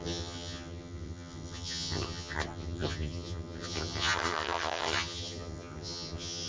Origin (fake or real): fake